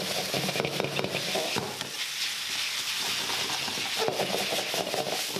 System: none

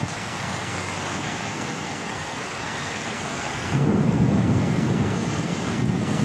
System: codec, SNAC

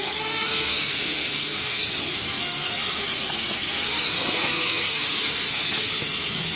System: codec, SNAC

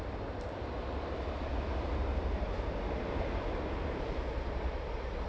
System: none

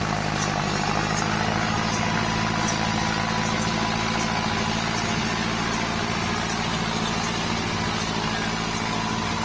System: none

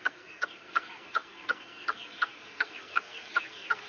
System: codec, SNAC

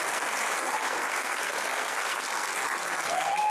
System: codec, SNAC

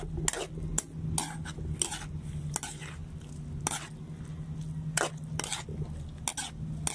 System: none